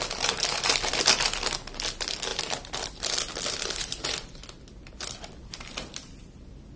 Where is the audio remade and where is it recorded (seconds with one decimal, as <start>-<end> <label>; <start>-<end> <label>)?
0.0-6.8 recorded